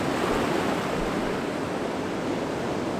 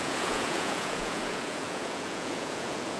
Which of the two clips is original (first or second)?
first